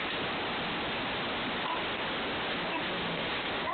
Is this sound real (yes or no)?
yes